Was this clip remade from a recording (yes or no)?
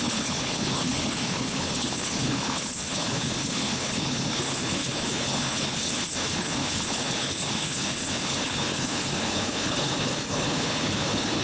yes